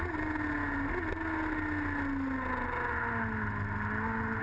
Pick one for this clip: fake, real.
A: real